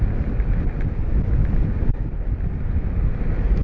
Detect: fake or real real